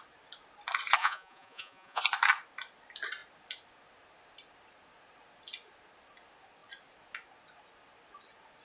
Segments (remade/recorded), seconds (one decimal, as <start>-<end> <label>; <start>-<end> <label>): 0.0-1.0 recorded; 1.0-2.0 remade; 2.0-8.6 recorded